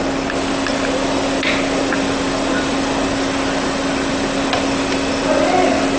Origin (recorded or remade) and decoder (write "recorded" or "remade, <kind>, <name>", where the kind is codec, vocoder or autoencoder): recorded